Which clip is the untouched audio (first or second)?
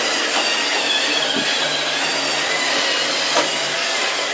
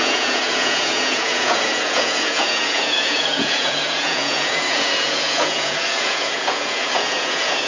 first